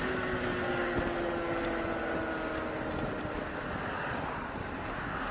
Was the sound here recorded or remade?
recorded